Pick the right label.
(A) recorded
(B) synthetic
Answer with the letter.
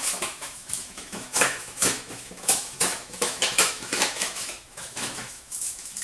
B